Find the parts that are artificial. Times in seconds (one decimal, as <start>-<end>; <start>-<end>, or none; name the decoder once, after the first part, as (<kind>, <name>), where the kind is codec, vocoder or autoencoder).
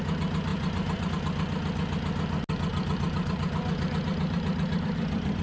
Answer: 0.5-1.1 (vocoder, BigVGAN v2); 2.7-5.4